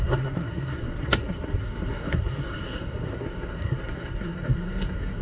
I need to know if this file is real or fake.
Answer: fake